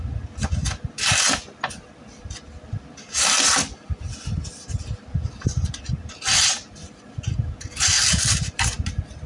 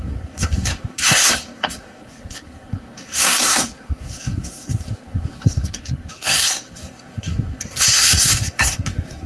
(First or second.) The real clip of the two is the first